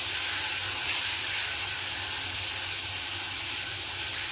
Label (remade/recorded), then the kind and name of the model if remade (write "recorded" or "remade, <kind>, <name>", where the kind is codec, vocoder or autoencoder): recorded